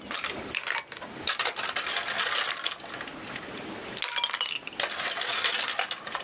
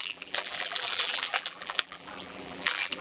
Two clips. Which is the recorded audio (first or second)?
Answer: first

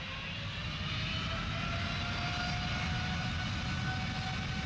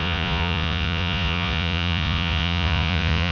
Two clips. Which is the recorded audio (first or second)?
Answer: first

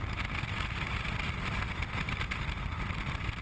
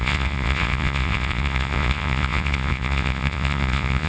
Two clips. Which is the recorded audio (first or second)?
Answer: first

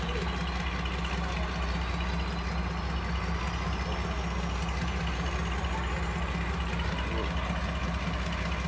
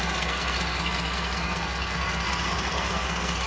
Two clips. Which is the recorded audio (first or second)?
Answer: first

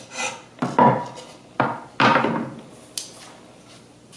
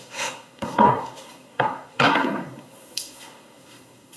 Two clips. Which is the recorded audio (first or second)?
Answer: first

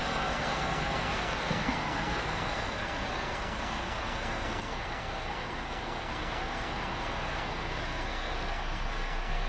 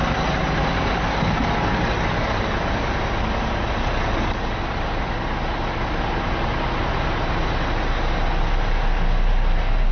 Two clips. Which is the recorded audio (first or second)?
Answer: second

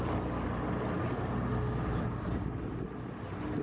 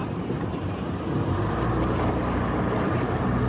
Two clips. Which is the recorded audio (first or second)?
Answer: first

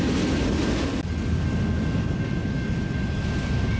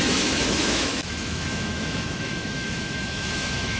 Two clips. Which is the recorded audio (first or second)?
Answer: first